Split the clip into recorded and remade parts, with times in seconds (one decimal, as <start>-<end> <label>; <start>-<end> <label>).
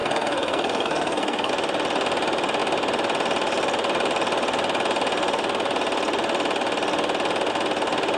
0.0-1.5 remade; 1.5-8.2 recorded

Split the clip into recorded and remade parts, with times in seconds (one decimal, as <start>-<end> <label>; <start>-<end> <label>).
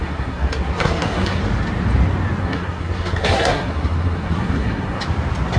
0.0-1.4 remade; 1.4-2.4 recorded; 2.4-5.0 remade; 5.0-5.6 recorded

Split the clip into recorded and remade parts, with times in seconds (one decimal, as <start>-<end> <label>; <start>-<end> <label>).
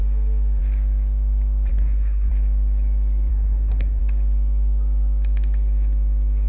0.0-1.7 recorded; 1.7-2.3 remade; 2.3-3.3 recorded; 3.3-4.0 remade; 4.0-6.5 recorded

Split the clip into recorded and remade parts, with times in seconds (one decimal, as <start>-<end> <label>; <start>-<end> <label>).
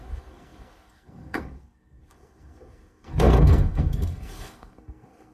0.0-5.3 remade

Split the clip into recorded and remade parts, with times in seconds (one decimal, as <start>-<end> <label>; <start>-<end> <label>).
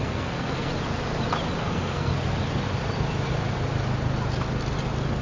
0.0-0.7 remade; 0.7-1.6 recorded; 1.6-2.1 remade; 2.1-5.2 recorded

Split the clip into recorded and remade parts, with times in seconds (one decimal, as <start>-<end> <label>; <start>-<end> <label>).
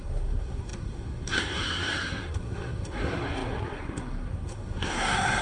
0.0-5.4 remade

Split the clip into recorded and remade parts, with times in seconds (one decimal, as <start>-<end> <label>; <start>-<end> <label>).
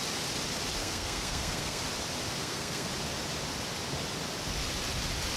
0.0-0.8 recorded; 0.8-1.8 remade; 1.8-2.4 recorded; 2.4-2.9 remade; 2.9-5.4 recorded